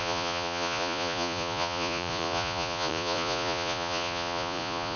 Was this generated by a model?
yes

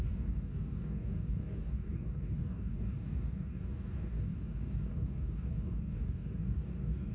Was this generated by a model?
yes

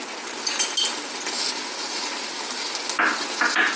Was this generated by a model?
no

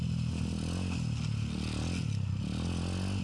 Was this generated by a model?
no